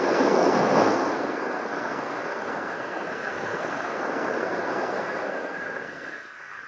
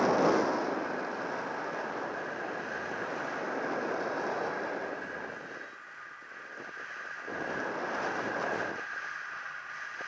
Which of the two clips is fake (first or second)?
first